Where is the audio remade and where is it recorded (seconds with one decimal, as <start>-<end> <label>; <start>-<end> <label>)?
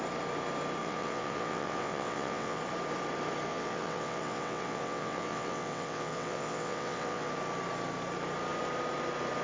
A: 0.0-0.8 recorded; 0.8-2.6 remade; 2.6-3.5 recorded; 3.5-7.3 remade; 7.3-9.4 recorded